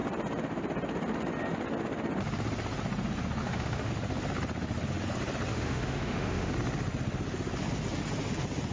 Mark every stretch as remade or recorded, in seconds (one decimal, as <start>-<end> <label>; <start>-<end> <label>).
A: 0.0-3.4 recorded; 3.4-3.9 remade; 3.9-5.5 recorded; 5.5-6.5 remade; 6.5-8.7 recorded